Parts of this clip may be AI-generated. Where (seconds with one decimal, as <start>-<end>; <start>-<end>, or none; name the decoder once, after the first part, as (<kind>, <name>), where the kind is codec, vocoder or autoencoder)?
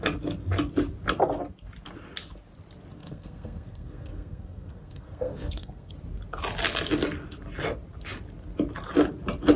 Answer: 3.0-5.9 (codec, SNAC)